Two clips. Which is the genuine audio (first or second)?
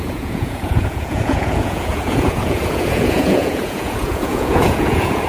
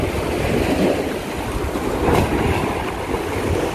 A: second